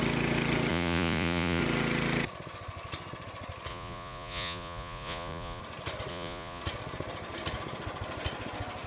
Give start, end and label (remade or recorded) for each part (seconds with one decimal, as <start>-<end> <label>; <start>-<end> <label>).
0.0-0.7 recorded; 0.7-1.6 remade; 1.6-3.7 recorded; 3.7-5.6 remade; 5.6-6.1 recorded; 6.1-6.6 remade; 6.6-8.9 recorded